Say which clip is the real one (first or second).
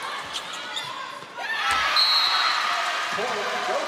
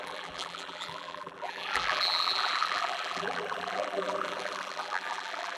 first